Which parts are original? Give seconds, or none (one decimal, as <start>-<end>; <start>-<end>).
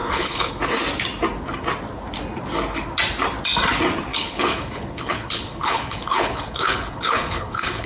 0.5-4.1